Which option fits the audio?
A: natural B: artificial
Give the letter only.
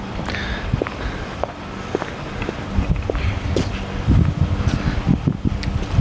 A